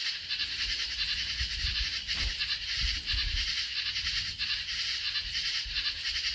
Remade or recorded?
recorded